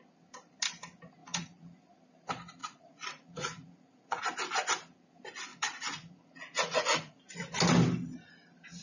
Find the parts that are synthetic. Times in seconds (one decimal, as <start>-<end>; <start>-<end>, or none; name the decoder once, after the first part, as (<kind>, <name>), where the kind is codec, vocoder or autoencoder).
1.2-1.8 (vocoder, Vocos); 2.6-4.2; 5.5-7.2